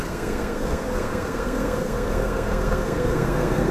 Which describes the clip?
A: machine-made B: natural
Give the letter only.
A